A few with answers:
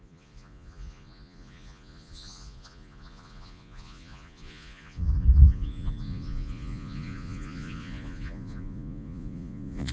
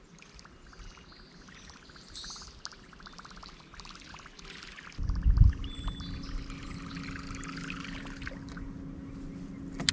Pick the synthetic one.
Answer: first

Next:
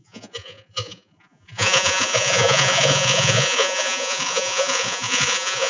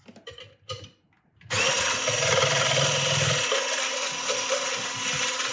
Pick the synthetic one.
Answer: first